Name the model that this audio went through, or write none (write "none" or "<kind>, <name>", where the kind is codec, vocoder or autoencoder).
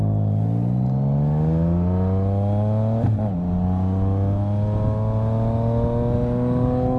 none